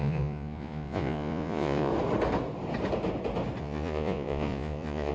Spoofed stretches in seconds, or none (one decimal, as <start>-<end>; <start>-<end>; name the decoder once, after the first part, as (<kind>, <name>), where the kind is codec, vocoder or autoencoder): 0.0-1.9 (vocoder, Vocos); 3.6-5.1